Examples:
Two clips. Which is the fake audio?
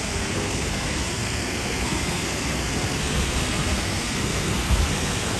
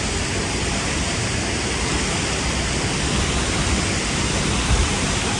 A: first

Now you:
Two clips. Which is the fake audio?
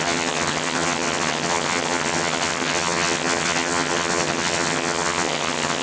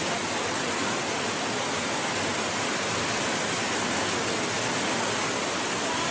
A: first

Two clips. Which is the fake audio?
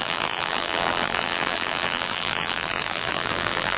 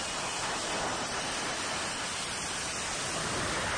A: first